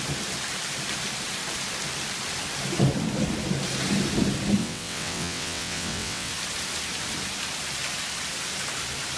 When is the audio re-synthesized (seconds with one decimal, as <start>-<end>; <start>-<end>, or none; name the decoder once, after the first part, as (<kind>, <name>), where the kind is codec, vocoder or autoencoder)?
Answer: 4.6-6.3 (vocoder, WaveNeXt)